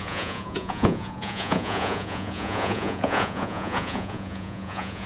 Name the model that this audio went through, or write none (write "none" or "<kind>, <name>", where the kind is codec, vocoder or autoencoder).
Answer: vocoder, Vocos